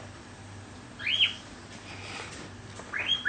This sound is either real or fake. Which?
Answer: real